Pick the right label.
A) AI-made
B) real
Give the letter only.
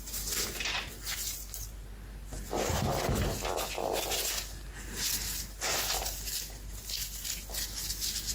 B